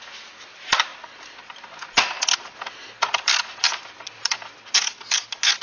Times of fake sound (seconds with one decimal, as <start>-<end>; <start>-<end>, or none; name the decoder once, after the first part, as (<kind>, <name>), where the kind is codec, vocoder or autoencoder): none